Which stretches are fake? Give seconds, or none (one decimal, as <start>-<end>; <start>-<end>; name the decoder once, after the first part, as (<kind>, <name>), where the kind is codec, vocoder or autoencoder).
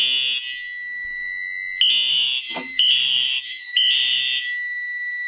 2.1-5.3 (autoencoder, DAC-VAE)